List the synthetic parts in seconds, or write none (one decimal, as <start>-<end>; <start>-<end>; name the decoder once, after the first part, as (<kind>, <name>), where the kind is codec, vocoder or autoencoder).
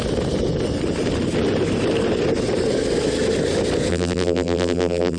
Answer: 3.9-5.2 (vocoder, BigVGAN v2)